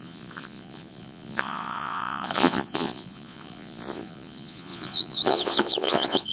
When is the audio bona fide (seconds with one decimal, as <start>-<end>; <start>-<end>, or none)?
none